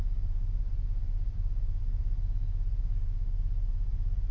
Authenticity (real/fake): fake